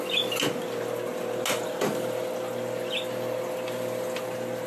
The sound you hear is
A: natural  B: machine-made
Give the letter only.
A